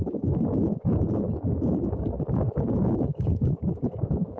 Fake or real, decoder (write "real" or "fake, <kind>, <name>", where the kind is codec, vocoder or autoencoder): fake, codec, DAC